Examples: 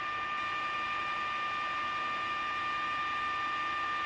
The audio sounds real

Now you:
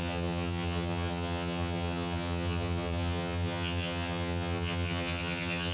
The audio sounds fake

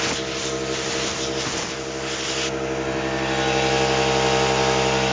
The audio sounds real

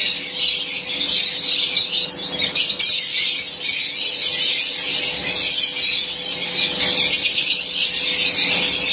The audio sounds real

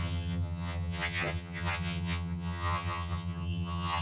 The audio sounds fake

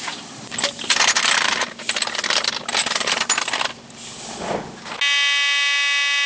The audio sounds real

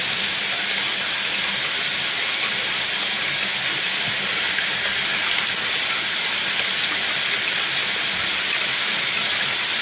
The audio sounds real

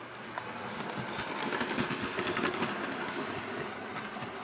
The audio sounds real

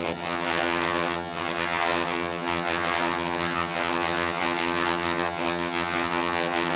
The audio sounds fake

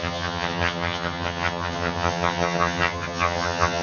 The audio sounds fake